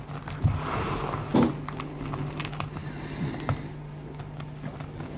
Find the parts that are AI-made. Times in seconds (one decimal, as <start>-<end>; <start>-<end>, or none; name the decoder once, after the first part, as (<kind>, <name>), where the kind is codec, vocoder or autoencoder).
none